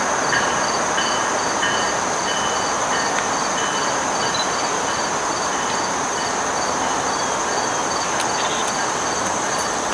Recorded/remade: recorded